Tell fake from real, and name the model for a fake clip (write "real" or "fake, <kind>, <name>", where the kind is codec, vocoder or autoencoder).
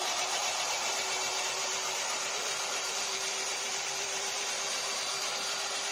fake, vocoder, BigVGAN v2